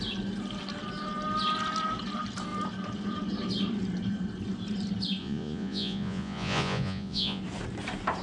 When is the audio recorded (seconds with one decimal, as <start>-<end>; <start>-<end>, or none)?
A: 0.0-5.2; 7.4-8.2